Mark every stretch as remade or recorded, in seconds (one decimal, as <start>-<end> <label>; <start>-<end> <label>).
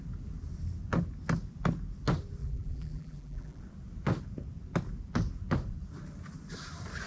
0.0-2.4 recorded; 2.4-3.6 remade; 3.6-7.1 recorded